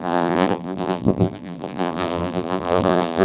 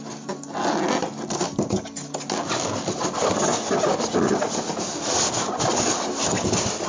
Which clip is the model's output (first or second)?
first